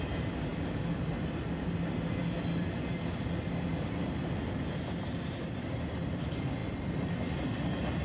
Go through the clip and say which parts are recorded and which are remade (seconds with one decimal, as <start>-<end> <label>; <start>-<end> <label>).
0.0-6.6 recorded; 6.6-7.1 remade; 7.1-8.0 recorded